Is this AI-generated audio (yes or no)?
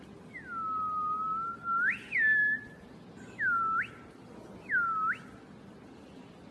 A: no